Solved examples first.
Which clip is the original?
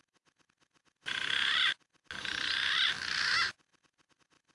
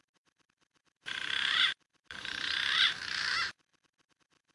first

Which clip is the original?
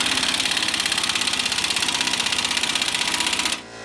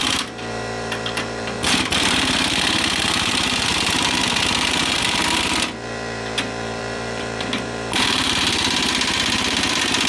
first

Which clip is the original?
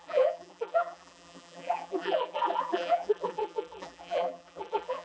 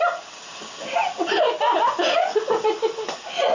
second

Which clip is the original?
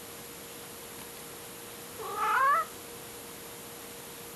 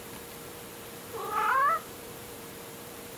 first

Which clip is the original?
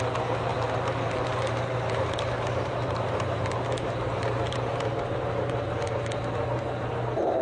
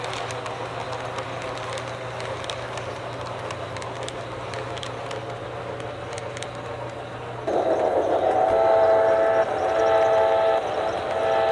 second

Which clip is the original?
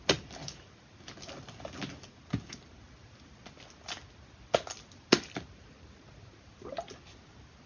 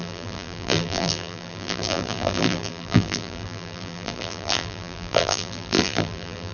first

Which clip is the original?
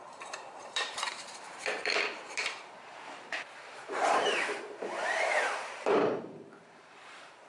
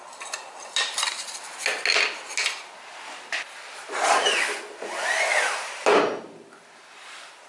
second